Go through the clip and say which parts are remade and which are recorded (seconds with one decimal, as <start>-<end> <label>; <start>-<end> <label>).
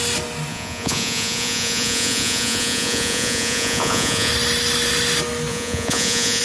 0.0-0.5 recorded; 0.5-4.3 remade; 4.3-5.5 recorded; 5.5-6.4 remade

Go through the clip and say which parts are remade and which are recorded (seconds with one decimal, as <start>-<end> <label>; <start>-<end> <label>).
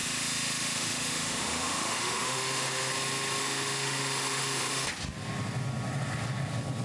0.0-2.9 remade; 2.9-3.4 recorded; 3.4-4.9 remade; 4.9-6.8 recorded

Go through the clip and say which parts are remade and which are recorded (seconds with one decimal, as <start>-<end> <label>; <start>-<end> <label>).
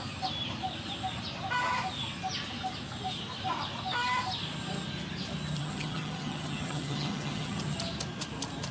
0.0-5.6 recorded; 5.6-7.6 remade; 7.6-8.7 recorded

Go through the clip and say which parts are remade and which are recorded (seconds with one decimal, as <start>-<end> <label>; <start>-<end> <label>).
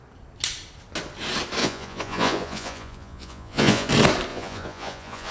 0.0-1.6 recorded; 1.6-3.9 remade; 3.9-4.3 recorded; 4.3-5.3 remade